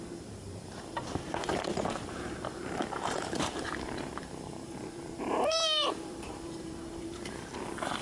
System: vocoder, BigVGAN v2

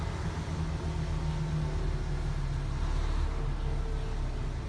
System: none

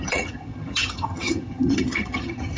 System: vocoder, HiFi-GAN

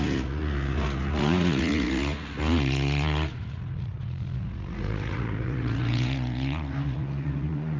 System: vocoder, Vocos